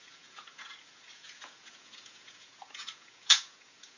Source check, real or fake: fake